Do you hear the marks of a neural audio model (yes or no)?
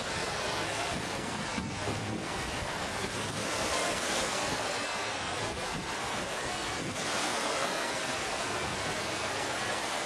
yes